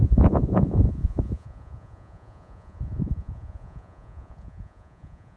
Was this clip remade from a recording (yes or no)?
yes